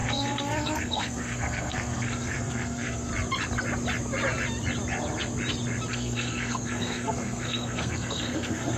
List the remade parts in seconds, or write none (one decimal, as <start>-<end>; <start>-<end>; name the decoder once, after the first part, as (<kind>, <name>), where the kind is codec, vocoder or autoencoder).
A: 0.0-3.1 (codec, SNAC); 5.9-8.8